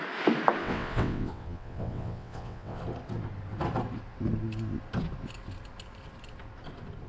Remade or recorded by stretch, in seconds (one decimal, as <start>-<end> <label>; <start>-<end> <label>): 0.0-0.6 recorded; 0.6-2.8 remade; 2.8-7.1 recorded